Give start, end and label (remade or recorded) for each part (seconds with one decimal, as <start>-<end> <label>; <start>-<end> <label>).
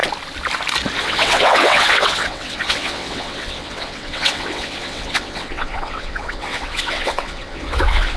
0.0-1.0 recorded; 1.0-8.2 remade